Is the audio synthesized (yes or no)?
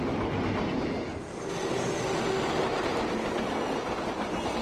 no